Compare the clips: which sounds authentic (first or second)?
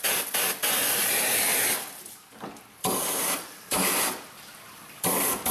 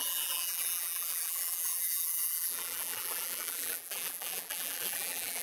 first